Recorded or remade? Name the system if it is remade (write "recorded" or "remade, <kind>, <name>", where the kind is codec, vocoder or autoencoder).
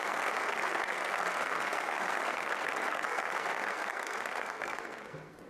remade, codec, SNAC